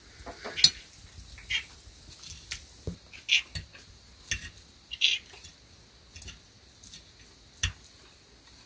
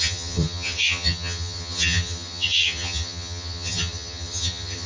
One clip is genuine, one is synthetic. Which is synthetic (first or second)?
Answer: second